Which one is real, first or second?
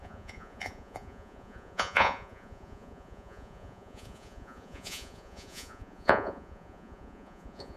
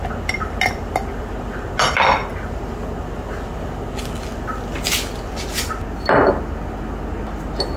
second